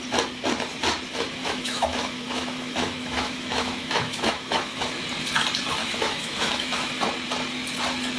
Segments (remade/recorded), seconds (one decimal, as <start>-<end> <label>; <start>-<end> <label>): 0.0-1.4 recorded; 1.4-4.9 remade; 4.9-5.8 recorded; 5.8-6.9 remade; 6.9-8.2 recorded